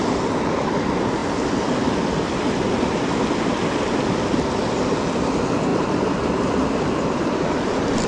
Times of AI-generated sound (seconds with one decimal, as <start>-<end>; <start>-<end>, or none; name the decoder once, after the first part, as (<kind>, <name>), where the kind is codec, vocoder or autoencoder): none